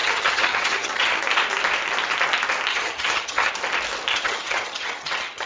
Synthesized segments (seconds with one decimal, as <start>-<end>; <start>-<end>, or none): 0.0-1.2; 2.7-3.5; 4.1-5.5